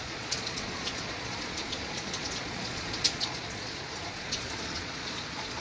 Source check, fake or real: fake